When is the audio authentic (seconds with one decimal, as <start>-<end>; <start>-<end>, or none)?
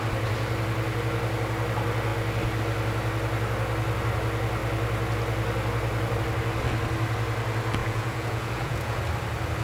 0.0-7.8; 9.0-9.6